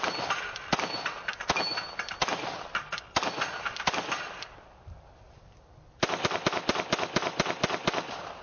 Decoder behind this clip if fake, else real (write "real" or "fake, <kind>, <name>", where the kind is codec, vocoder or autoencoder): real